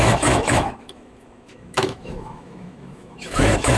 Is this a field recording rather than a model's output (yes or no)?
no